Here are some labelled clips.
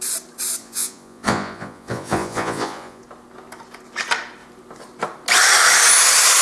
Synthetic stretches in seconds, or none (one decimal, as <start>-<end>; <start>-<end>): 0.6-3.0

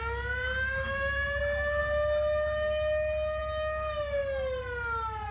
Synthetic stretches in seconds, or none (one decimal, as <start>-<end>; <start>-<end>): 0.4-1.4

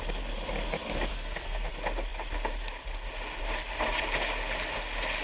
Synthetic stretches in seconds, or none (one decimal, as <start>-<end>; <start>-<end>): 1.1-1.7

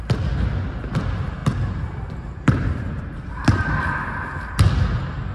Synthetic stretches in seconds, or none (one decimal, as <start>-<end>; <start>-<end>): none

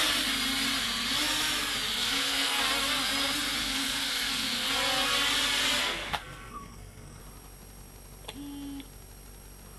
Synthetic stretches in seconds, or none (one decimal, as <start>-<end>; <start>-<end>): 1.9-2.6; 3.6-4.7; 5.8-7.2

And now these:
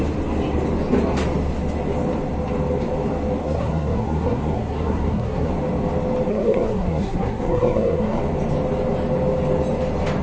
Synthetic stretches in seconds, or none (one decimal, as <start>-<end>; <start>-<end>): 3.4-5.5; 6.3-8.2

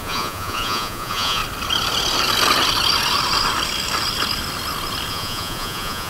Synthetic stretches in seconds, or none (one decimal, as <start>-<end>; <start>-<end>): 0.0-1.4; 5.1-6.1